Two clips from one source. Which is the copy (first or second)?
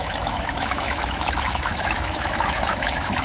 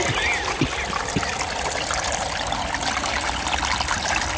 first